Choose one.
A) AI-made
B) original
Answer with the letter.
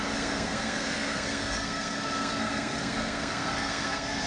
A